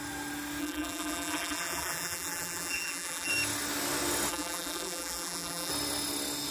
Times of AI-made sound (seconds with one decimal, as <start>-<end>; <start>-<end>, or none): 0.6-3.3; 4.3-5.7